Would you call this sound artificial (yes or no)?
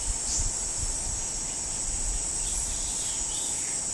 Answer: no